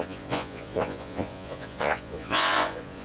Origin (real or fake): fake